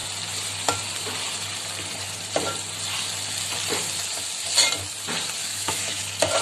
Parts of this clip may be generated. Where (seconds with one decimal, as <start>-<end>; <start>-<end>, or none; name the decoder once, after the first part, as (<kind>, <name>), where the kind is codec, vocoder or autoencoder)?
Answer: 5.4-6.0 (autoencoder, DAC-VAE)